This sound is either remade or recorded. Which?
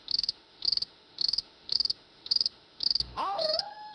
remade